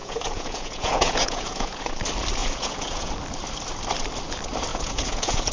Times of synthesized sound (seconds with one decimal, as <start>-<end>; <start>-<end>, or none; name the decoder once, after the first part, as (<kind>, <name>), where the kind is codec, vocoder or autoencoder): 0.0-1.9 (vocoder, Vocos); 2.4-3.1; 4.7-5.5